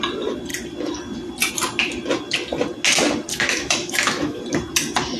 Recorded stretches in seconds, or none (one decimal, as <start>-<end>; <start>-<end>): 0.0-3.3; 4.4-5.2